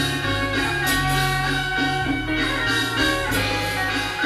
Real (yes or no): yes